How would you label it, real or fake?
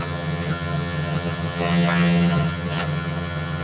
fake